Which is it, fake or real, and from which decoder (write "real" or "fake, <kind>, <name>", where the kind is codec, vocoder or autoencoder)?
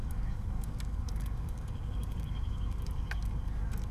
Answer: fake, codec, DAC